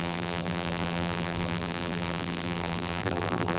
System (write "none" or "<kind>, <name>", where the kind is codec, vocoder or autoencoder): vocoder, BigVGAN v2